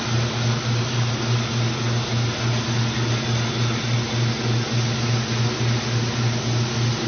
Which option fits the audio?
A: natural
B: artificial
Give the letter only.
A